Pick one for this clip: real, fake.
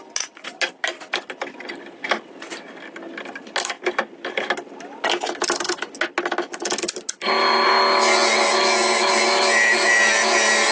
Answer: real